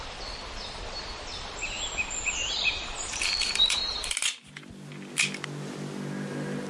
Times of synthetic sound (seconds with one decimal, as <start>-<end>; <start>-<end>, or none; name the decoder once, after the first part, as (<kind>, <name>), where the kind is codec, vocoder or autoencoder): 2.4-4.1 (vocoder, BigVGAN v2)

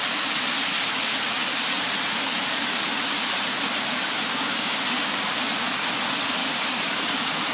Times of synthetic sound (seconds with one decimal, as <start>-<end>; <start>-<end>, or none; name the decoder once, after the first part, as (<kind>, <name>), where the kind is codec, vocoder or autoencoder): 3.9-5.3 (codec, DAC); 6.4-7.5

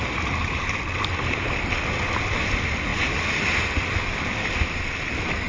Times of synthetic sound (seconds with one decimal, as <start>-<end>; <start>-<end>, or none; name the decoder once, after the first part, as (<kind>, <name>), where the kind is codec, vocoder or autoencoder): none

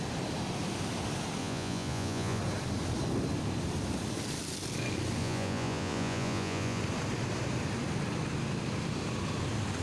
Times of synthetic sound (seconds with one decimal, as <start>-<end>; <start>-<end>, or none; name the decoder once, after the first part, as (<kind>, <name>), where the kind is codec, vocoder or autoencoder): 1.4-2.4 (vocoder, Vocos); 5.2-6.8

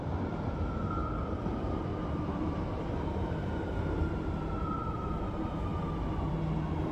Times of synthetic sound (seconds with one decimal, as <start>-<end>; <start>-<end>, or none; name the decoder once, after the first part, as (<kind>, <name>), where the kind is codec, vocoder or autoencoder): 1.9-3.5 (vocoder, BigVGAN v2)

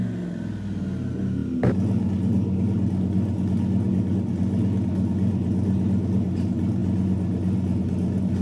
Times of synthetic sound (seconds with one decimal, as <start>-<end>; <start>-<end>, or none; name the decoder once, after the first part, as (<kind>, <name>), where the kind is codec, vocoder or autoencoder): none